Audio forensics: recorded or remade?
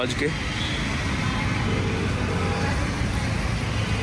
recorded